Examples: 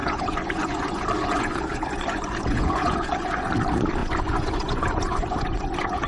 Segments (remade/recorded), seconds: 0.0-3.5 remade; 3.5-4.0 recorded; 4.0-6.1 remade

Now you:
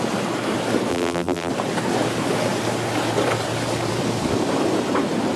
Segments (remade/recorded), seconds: 0.0-0.9 recorded; 0.9-1.5 remade; 1.5-5.4 recorded

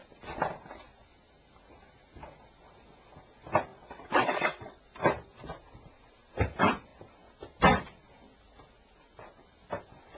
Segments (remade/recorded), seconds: 0.0-3.7 recorded; 3.7-4.8 remade; 4.8-10.2 recorded

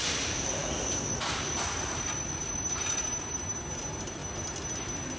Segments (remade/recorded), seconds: 0.0-5.2 recorded